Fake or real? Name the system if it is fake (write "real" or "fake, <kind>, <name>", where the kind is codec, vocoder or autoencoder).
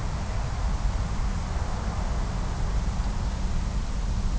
real